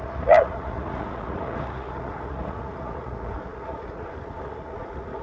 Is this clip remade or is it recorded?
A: remade